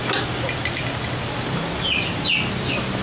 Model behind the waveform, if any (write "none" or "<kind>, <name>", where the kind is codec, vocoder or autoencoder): none